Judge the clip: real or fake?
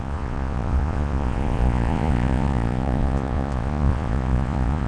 fake